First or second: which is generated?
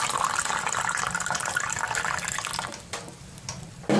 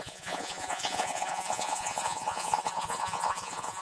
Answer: second